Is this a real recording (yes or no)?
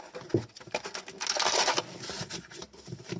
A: yes